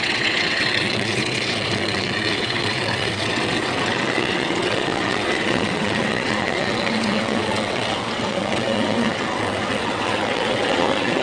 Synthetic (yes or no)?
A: yes